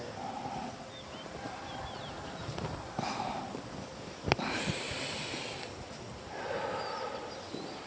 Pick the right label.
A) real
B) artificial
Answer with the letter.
A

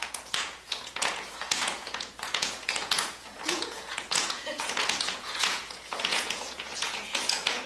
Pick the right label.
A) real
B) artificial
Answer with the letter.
B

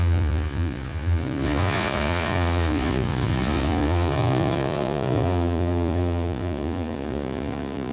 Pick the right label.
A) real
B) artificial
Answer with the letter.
B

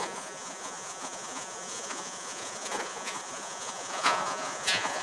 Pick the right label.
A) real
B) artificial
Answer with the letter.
B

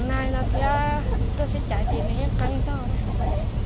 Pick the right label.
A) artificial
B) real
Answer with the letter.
B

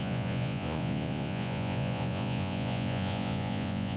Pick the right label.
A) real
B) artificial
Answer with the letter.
B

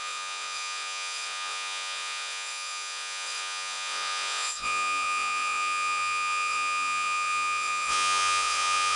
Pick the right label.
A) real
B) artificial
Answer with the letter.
B